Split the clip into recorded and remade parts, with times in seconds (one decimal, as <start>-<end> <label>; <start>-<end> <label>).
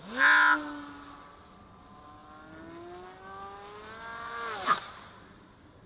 0.0-5.9 recorded